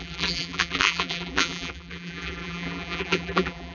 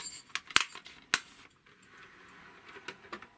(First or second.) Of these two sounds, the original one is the second